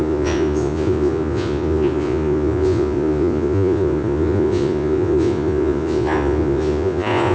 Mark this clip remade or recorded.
remade